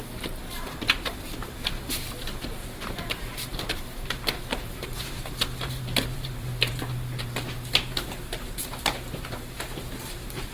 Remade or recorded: remade